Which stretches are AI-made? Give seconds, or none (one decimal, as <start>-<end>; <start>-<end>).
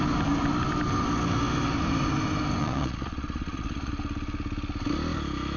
2.6-3.9